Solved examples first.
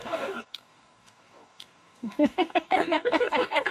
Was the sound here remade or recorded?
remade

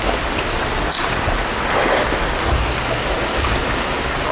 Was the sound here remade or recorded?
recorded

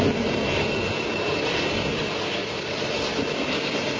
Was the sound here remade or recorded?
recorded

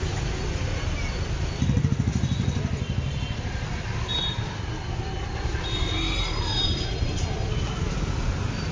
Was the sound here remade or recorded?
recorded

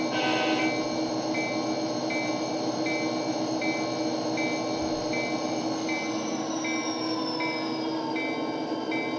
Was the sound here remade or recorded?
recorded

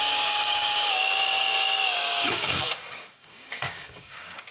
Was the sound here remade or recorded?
remade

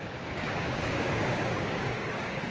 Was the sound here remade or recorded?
remade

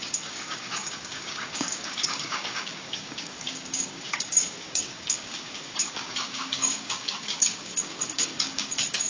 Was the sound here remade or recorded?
remade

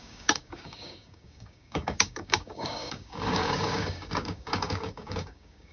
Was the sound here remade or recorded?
remade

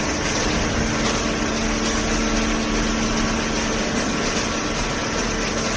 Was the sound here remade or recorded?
recorded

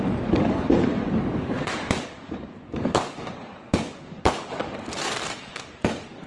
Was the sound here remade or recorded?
remade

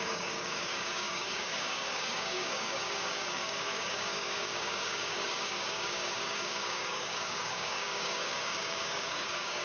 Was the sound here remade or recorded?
remade